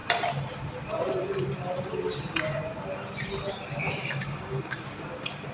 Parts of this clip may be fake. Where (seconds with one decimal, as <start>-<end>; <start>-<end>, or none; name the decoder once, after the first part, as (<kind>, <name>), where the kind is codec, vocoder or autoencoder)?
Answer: 4.0-4.8 (codec, DAC)